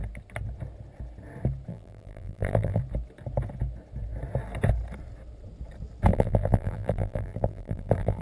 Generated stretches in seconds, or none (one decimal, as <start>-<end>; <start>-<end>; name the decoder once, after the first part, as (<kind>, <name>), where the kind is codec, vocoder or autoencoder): 1.7-2.8 (vocoder, BigVGAN v2); 6.1-8.2